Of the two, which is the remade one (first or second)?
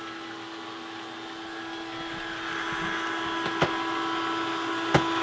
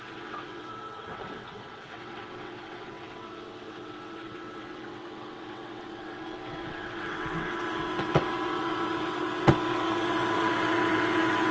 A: second